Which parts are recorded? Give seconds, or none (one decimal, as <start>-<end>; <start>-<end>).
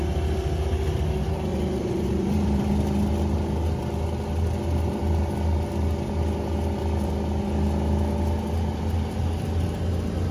0.0-1.5; 2.7-10.3